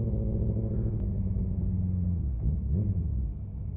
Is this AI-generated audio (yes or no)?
no